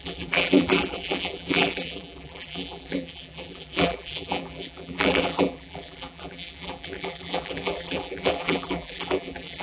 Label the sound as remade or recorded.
remade